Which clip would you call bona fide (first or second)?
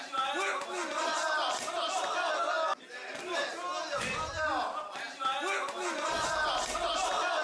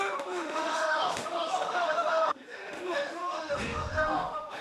first